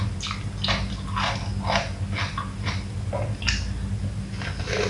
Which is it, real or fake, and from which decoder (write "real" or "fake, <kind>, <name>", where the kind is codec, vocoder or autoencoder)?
real